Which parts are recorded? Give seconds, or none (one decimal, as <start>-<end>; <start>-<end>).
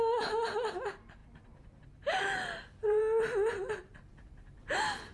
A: 0.0-1.2; 3.0-5.1